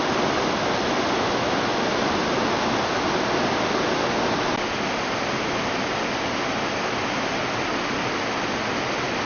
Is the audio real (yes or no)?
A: yes